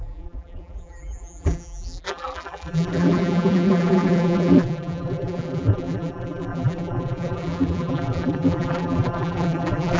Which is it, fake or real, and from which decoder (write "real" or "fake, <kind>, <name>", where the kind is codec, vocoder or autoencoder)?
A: fake, vocoder, BigVGAN v2